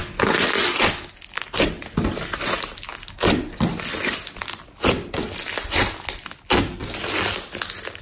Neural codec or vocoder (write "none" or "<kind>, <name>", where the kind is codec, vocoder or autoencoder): none